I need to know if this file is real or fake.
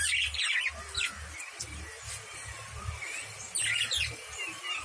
real